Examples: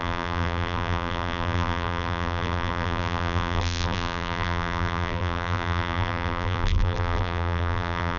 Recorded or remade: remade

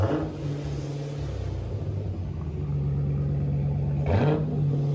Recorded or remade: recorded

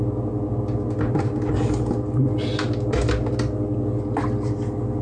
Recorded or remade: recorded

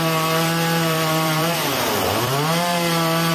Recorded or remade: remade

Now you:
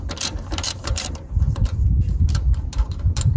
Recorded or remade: remade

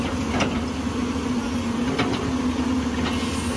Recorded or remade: recorded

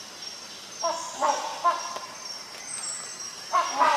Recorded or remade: recorded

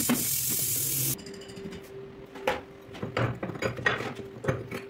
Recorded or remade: recorded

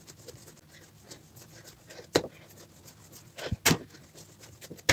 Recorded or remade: recorded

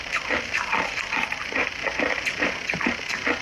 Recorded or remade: recorded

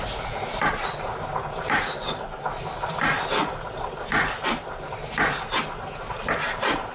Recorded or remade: recorded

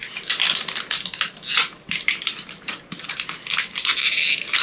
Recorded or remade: remade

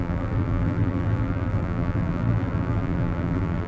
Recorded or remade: remade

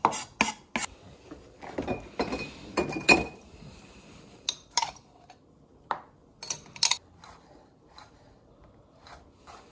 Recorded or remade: recorded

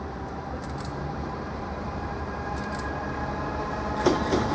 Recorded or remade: remade